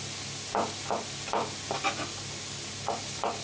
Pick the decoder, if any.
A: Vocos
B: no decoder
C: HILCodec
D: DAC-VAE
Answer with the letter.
B